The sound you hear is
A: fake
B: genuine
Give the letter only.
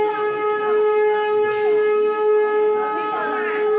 B